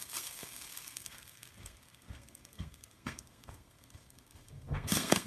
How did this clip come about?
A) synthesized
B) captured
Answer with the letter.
A